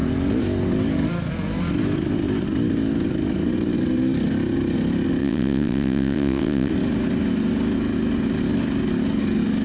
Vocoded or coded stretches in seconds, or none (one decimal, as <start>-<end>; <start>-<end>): 5.2-6.7

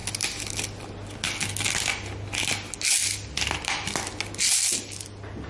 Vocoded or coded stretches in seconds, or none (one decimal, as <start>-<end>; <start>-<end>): none